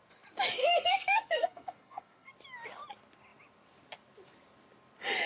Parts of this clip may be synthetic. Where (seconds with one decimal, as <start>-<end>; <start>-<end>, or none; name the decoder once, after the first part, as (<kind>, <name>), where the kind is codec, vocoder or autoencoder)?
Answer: 0.6-2.3 (codec, SNAC)